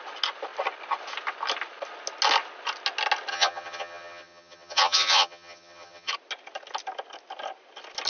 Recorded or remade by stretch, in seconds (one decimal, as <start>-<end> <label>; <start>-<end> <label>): 0.0-3.3 recorded; 3.3-6.1 remade; 6.1-8.1 recorded